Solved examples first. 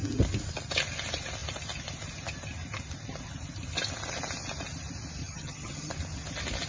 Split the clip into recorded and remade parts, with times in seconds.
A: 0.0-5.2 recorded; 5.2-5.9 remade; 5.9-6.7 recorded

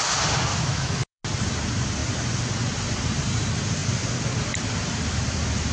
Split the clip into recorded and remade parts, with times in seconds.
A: 0.0-0.5 recorded; 0.5-1.2 remade; 1.2-5.7 recorded

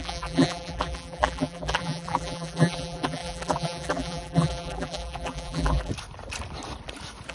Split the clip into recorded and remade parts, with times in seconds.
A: 0.0-5.9 remade; 5.9-7.3 recorded

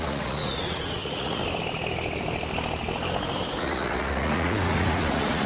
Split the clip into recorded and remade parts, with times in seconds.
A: 0.0-1.4 remade; 1.4-3.6 recorded; 3.6-5.5 remade

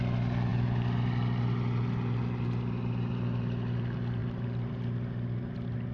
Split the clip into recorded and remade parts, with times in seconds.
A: 0.0-5.9 recorded